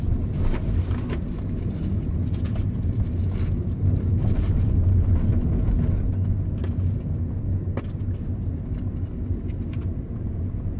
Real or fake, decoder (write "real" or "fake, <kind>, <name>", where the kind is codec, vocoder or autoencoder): real